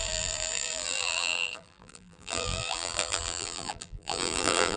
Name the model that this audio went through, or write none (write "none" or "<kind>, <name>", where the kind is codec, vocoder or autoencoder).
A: vocoder, BigVGAN v2